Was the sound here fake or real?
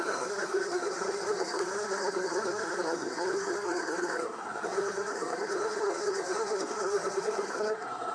fake